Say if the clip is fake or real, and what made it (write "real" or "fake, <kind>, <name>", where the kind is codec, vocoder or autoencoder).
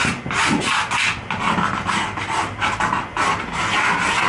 real